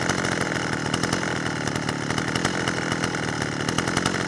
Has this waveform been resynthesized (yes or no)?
no